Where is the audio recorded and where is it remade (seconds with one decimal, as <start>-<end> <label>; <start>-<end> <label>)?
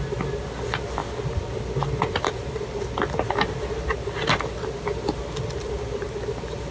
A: 0.0-6.7 recorded